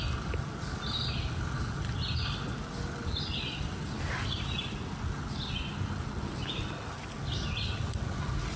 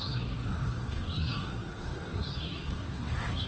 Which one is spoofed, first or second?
second